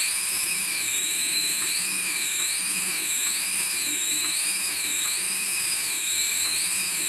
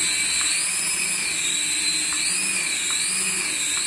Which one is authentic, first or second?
second